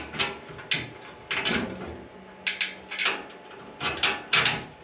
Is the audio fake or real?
real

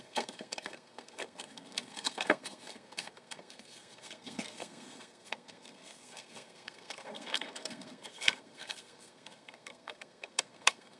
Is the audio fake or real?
fake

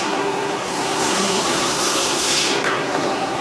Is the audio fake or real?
fake